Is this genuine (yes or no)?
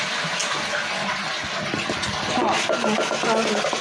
yes